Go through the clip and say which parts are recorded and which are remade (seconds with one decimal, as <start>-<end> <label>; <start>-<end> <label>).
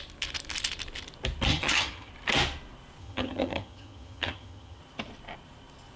0.0-1.5 recorded; 1.5-2.1 remade; 2.1-3.0 recorded; 3.0-4.8 remade; 4.8-6.0 recorded